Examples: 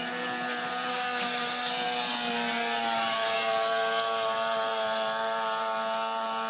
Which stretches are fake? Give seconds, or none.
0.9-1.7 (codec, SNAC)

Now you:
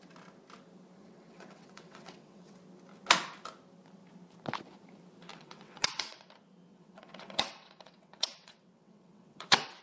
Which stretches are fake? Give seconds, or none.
1.0-2.6 (vocoder, WaveNeXt); 5.3-6.3; 6.7-9.8